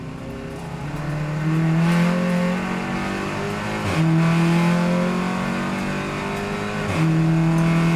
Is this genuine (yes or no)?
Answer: yes